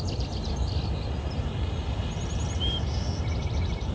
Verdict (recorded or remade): recorded